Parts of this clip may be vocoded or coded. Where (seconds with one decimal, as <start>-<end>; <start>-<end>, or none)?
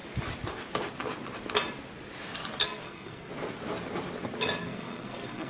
2.6-3.3; 4.6-5.5